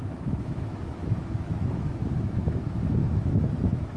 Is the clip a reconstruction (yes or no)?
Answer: yes